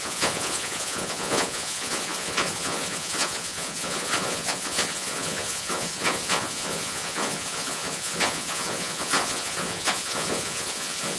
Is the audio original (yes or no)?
no